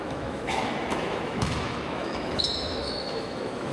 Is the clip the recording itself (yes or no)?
no